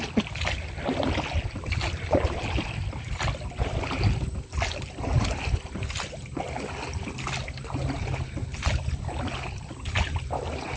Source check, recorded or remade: recorded